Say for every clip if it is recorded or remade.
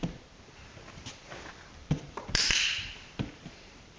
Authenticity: remade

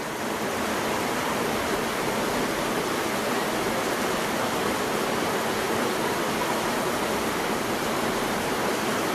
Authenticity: remade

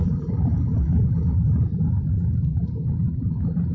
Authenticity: remade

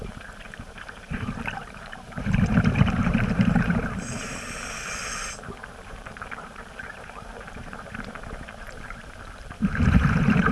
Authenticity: remade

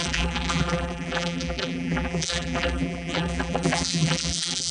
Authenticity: remade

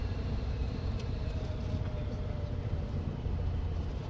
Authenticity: remade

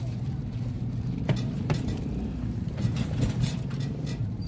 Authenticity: remade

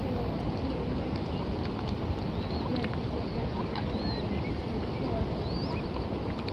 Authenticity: recorded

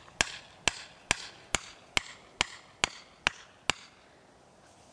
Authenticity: recorded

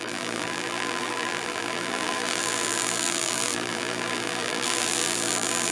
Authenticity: remade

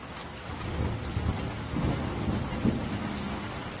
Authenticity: recorded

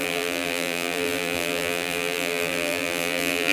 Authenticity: remade